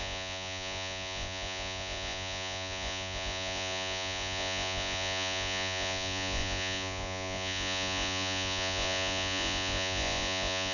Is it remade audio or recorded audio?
remade